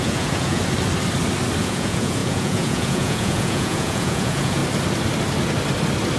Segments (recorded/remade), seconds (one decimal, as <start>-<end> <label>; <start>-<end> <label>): 0.0-0.6 remade; 0.6-1.6 recorded; 1.6-4.6 remade; 4.6-6.2 recorded